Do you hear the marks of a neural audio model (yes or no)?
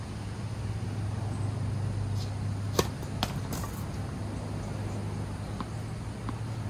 no